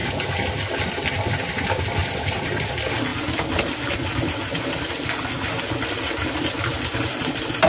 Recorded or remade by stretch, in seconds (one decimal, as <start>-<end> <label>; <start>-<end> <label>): 0.0-2.0 recorded; 2.0-2.7 remade; 2.7-7.7 recorded